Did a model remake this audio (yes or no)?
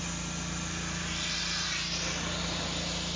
no